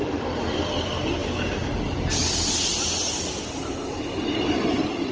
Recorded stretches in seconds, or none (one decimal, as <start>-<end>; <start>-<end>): 0.0-1.2; 1.7-5.1